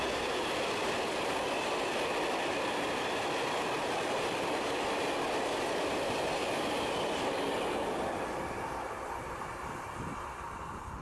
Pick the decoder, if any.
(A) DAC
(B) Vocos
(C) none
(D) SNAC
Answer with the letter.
C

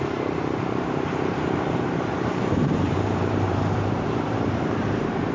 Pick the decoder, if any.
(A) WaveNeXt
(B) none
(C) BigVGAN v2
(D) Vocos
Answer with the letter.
C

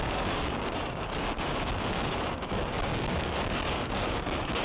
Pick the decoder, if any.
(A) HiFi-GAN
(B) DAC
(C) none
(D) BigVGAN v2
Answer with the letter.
B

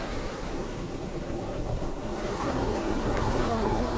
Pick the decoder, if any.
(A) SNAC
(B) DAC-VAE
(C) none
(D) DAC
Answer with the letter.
A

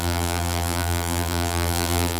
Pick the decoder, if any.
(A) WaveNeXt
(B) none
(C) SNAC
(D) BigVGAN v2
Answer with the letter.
D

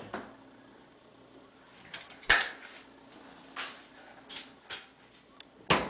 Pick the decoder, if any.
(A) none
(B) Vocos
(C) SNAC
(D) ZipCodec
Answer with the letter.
A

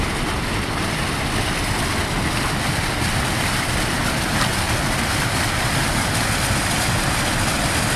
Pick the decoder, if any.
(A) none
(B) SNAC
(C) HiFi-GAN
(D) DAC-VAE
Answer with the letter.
A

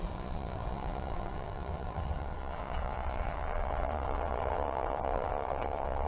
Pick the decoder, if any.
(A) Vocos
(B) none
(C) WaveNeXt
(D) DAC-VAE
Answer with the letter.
C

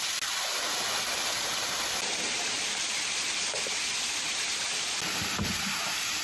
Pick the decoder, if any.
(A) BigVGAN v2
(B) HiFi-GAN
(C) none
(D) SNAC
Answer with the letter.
C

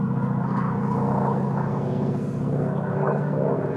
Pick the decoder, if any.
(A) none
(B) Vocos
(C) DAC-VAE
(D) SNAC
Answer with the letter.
D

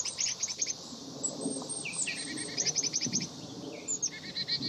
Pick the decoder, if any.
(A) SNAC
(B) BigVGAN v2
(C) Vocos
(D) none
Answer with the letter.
D